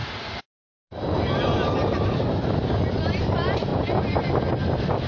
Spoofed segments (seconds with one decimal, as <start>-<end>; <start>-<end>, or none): 0.0-2.9; 3.7-4.4